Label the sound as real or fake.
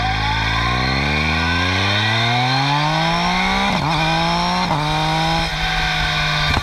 real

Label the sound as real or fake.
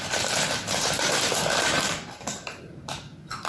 fake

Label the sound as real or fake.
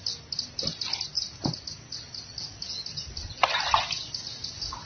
real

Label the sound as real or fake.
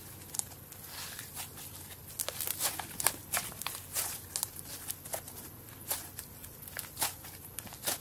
real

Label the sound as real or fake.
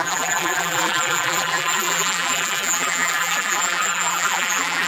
fake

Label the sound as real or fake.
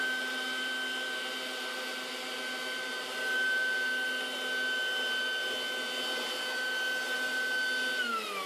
real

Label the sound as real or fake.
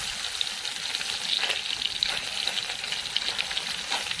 real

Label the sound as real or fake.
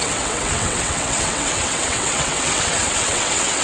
fake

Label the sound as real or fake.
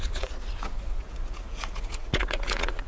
fake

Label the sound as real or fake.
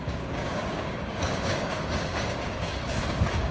fake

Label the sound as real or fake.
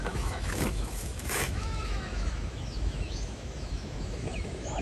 fake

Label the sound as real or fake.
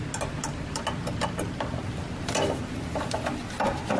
real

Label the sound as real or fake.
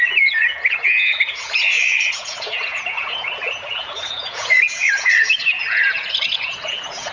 fake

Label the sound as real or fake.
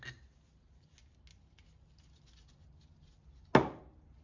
real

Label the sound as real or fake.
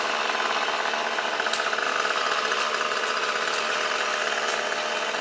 real